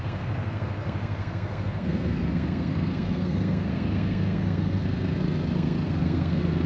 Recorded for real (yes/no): no